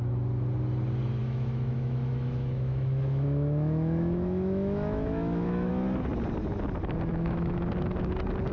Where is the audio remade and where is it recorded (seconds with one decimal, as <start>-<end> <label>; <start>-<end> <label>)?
0.0-1.2 recorded; 1.2-5.7 remade; 5.7-7.1 recorded; 7.1-7.6 remade; 7.6-8.5 recorded